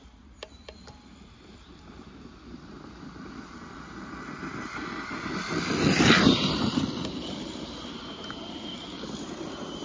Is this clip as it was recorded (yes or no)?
yes